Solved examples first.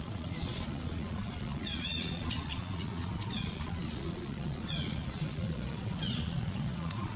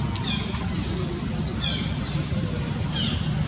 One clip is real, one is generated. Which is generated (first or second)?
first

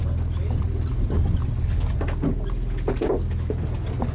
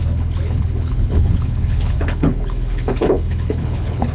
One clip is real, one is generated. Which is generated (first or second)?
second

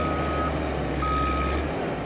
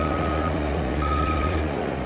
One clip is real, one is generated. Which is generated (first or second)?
second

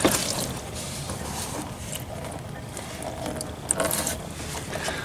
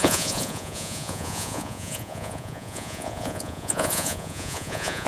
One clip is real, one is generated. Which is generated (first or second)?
second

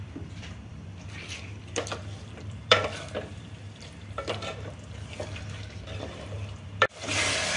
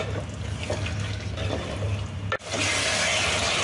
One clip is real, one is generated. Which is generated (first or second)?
first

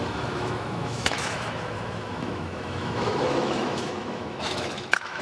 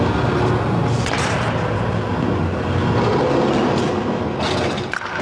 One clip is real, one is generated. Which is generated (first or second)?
first